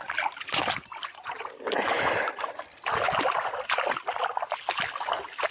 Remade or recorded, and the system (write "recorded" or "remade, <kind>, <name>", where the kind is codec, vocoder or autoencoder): recorded